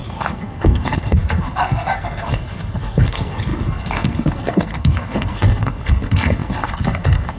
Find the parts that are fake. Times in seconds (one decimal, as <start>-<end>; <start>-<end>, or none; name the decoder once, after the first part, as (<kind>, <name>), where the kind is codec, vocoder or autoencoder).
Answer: 0.0-7.4 (codec, SNAC)